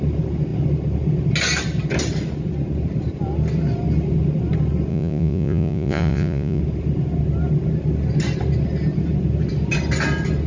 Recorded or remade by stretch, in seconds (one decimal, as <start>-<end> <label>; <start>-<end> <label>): 0.0-4.9 recorded; 4.9-6.6 remade; 6.6-10.5 recorded